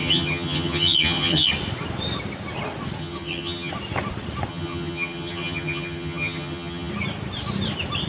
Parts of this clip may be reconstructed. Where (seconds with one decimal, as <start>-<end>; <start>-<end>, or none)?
0.0-1.5; 3.0-3.7; 4.5-6.9